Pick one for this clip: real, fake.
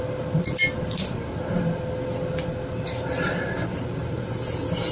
real